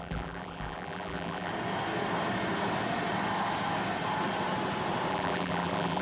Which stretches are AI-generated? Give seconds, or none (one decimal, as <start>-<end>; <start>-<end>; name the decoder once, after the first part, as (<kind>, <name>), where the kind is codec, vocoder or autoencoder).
0.0-1.5 (vocoder, BigVGAN v2); 5.1-6.0